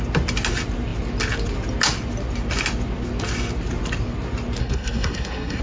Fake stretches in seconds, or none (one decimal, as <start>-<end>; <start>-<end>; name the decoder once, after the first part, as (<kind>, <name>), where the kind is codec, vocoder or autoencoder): 4.6-5.6 (codec, SNAC)